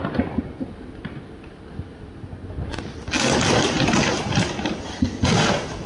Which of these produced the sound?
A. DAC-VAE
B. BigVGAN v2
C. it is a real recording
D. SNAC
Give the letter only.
C